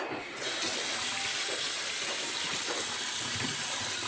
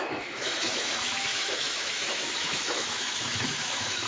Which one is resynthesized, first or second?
second